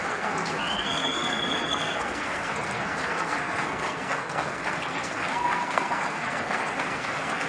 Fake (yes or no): yes